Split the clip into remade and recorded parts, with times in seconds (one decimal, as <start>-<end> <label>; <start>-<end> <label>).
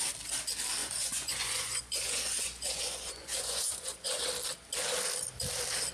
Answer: 0.0-0.8 recorded; 0.8-4.3 remade; 4.3-5.9 recorded